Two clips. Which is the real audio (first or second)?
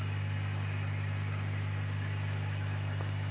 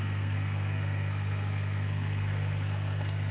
first